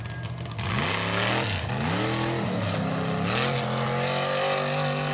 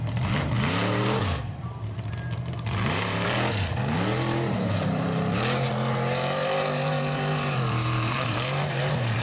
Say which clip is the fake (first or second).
second